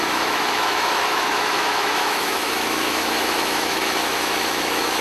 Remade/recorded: remade